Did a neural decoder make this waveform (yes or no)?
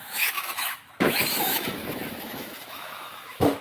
yes